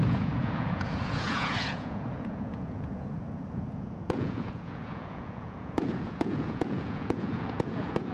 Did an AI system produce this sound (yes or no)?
yes